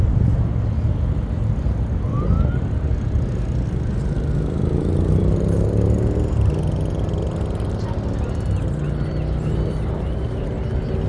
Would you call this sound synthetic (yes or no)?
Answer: no